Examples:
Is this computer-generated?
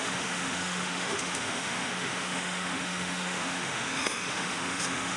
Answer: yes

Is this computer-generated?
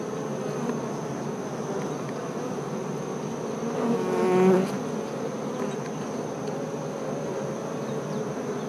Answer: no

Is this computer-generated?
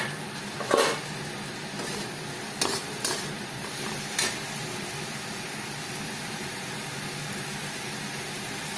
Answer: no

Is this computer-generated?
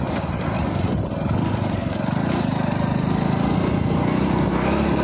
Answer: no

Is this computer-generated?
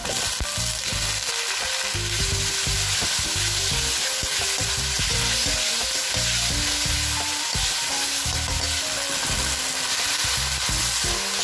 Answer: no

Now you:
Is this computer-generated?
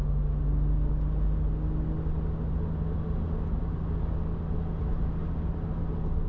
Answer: no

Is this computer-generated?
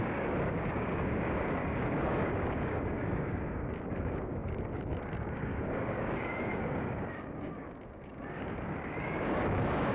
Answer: yes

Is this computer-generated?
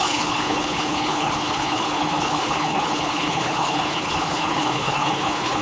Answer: yes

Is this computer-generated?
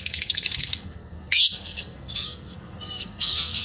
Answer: yes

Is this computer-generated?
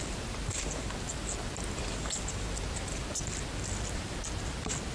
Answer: no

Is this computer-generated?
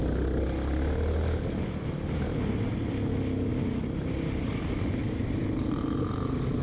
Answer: no